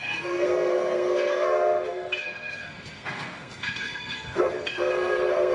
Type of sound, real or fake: fake